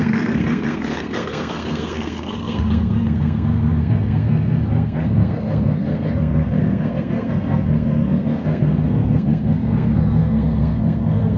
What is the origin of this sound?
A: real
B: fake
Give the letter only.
B